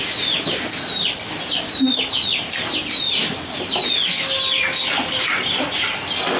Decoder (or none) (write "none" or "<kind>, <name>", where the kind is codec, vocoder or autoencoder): none